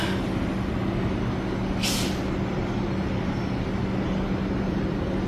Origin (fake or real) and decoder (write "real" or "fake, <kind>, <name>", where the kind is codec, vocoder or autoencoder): real